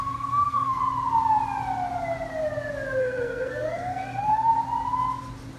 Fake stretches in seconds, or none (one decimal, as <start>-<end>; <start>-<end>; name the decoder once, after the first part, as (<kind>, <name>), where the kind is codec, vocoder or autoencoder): 0.0-0.8 (codec, SNAC); 3.0-4.5